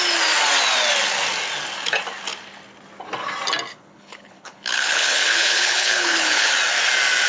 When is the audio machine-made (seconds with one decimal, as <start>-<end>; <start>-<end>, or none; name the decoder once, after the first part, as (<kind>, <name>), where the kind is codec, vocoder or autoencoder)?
3.7-6.5 (codec, HILCodec)